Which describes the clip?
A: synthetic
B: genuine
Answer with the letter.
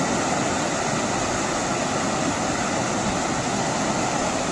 B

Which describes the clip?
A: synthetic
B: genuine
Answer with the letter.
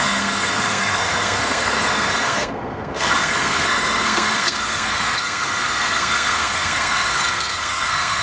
A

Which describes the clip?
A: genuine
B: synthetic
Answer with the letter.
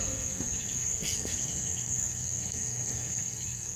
B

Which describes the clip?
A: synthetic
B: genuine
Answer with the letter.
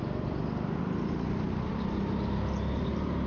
B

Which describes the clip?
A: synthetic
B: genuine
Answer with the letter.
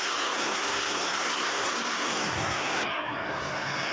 A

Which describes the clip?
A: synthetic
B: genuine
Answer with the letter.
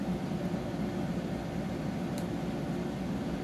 B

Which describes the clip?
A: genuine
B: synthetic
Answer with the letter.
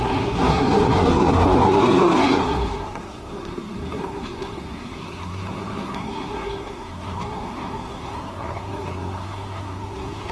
B